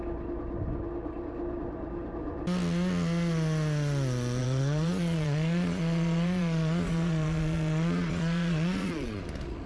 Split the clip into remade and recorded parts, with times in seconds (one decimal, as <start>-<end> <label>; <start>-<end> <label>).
0.0-4.4 recorded; 4.4-9.2 remade; 9.2-9.7 recorded